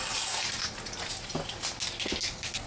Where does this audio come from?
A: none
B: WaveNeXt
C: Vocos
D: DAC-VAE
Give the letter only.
A